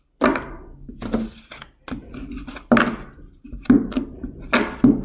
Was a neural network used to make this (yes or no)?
no